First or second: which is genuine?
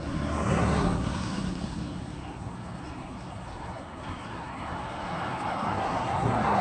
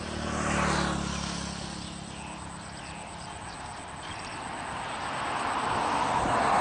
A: second